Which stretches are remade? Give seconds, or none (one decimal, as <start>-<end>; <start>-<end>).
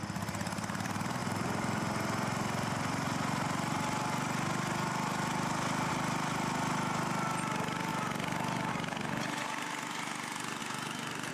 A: 10.6-11.3